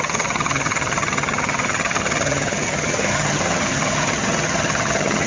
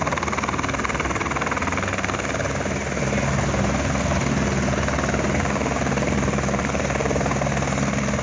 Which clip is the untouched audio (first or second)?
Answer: second